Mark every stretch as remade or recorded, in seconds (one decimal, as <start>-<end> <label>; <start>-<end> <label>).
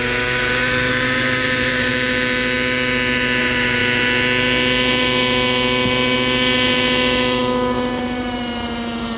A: 0.0-1.9 remade; 1.9-3.4 recorded; 3.4-3.8 remade; 3.8-8.0 recorded; 8.0-9.2 remade